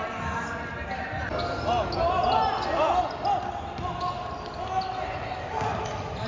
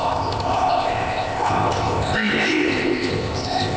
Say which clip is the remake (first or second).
second